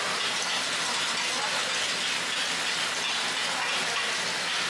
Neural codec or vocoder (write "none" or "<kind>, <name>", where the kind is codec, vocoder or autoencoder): none